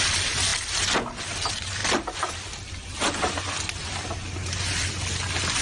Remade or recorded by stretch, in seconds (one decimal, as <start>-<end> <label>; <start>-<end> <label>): 0.0-5.6 recorded

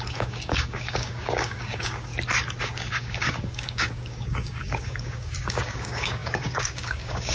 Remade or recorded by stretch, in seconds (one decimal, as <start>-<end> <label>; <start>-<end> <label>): 0.0-2.1 remade; 2.1-2.6 recorded; 2.6-7.3 remade

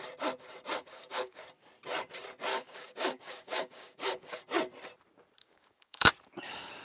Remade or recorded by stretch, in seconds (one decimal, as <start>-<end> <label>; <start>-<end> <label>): 0.0-0.8 recorded; 0.8-1.4 remade; 1.4-2.5 recorded; 2.5-4.4 remade; 4.4-5.4 recorded; 5.4-6.1 remade; 6.1-6.8 recorded

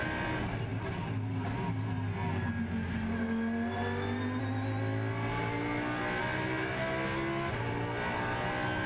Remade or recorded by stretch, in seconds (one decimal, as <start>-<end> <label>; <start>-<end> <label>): 0.0-8.9 recorded

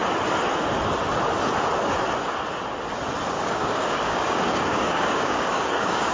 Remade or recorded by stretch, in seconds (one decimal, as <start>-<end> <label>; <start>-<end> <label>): 0.0-3.3 recorded; 3.3-6.1 remade

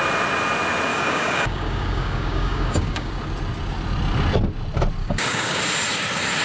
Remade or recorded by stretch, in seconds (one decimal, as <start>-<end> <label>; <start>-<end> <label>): 0.0-0.9 recorded; 0.9-3.1 remade; 3.1-5.0 recorded; 5.0-5.6 remade; 5.6-6.4 recorded